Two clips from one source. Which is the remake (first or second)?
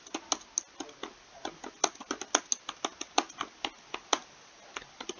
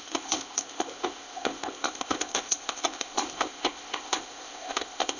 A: second